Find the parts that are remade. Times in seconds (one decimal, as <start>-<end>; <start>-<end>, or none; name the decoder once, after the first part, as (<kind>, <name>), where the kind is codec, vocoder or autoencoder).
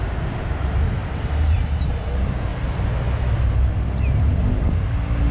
1.0-1.7 (vocoder, BigVGAN v2)